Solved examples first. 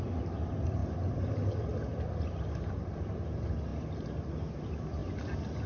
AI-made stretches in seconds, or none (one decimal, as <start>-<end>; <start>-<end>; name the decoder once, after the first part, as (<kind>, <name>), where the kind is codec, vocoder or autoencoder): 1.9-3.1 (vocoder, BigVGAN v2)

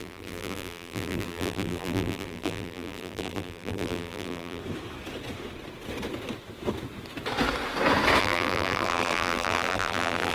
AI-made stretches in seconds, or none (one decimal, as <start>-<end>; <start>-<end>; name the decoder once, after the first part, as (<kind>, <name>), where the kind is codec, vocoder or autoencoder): 0.0-4.6 (vocoder, BigVGAN v2); 8.2-10.3

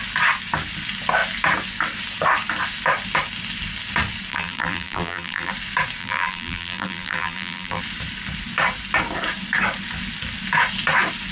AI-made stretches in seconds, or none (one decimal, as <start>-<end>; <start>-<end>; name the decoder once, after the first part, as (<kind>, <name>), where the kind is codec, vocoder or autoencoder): 4.3-5.5 (vocoder, BigVGAN v2); 6.0-7.8

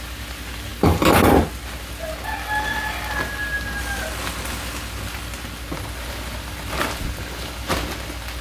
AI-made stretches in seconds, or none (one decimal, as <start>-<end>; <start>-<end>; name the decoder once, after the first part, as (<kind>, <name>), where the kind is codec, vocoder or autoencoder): none

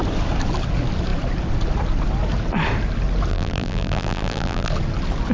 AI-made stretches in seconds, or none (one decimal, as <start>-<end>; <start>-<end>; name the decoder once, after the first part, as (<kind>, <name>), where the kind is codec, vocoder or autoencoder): 3.3-4.7 (vocoder, BigVGAN v2)